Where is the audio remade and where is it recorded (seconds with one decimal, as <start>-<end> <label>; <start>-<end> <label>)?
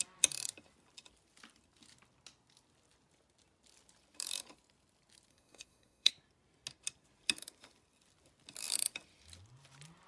0.0-5.3 recorded; 5.3-6.1 remade; 6.1-10.1 recorded